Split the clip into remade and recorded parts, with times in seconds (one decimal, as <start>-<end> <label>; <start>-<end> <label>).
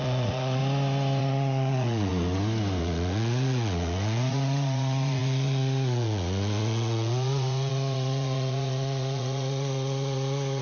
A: 0.0-0.6 remade; 0.6-1.2 recorded; 1.2-2.1 remade; 2.1-2.8 recorded; 2.8-10.6 remade